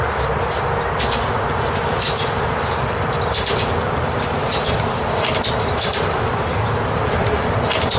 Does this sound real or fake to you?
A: real